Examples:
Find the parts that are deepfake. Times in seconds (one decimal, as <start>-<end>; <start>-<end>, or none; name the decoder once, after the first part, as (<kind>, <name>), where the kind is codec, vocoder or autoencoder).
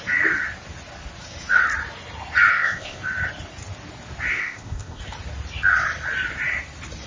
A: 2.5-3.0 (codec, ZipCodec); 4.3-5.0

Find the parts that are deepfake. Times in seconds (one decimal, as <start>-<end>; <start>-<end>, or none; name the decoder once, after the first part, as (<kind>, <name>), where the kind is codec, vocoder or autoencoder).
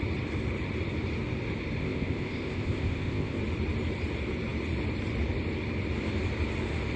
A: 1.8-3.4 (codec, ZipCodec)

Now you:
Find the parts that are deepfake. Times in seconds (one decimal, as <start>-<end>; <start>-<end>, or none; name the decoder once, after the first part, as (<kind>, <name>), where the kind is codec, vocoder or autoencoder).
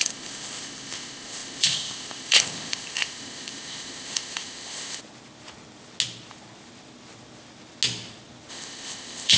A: 0.0-5.0 (codec, ZipCodec); 8.5-9.4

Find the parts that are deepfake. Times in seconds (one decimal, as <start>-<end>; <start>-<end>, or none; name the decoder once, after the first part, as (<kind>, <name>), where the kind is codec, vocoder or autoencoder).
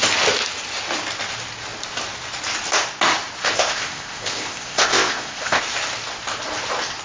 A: 3.4-5.6 (codec, ZipCodec)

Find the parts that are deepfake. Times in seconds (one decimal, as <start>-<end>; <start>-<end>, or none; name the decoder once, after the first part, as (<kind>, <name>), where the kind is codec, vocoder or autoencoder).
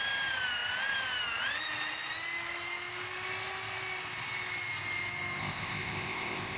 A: 5.4-6.6 (codec, ZipCodec)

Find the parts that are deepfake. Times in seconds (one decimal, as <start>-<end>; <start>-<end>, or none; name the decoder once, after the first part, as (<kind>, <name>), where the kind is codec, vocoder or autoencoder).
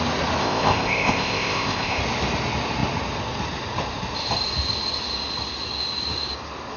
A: 0.4-2.0 (codec, ZipCodec)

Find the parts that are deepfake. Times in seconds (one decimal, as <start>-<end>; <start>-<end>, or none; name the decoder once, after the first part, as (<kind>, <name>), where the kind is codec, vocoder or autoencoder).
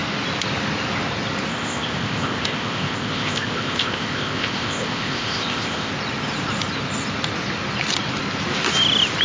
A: 1.5-5.9 (codec, ZipCodec)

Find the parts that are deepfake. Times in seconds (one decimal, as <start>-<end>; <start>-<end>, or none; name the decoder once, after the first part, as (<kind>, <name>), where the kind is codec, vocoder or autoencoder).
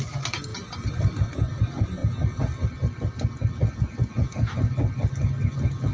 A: none